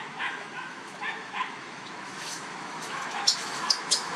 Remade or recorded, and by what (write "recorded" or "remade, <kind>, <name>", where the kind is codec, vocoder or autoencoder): remade, autoencoder, DAC-VAE